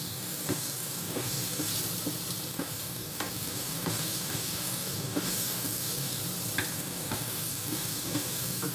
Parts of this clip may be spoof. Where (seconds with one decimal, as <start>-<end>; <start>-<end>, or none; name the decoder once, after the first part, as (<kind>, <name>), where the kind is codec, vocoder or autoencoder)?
0.0-1.7 (codec, DAC); 2.5-6.2; 6.7-8.7